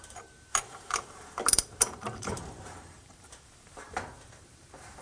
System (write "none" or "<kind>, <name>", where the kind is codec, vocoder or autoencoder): vocoder, BigVGAN v2